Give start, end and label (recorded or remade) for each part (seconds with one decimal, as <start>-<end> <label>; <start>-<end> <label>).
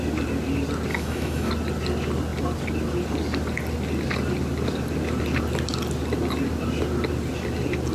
0.0-0.9 recorded; 0.9-1.5 remade; 1.5-7.9 recorded